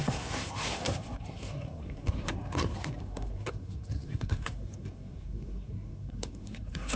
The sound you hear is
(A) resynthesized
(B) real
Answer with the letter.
A